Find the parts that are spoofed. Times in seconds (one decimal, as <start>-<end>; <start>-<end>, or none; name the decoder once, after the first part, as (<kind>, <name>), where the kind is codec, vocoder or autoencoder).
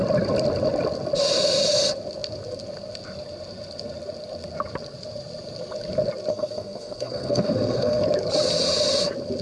6.3-8.0 (codec, SNAC)